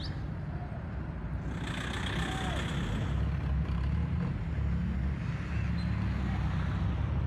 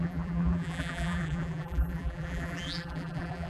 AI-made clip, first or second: second